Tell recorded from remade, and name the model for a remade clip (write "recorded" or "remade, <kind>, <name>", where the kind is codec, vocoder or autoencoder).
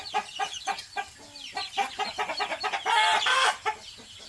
recorded